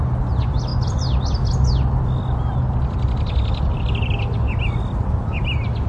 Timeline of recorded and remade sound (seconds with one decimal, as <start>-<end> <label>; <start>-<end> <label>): 0.0-5.9 recorded